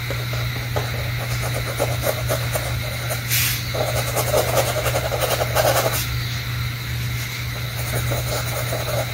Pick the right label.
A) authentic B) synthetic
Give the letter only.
A